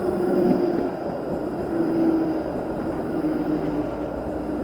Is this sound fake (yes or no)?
no